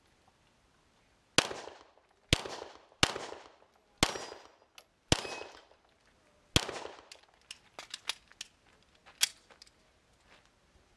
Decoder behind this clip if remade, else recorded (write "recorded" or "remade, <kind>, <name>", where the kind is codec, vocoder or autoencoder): recorded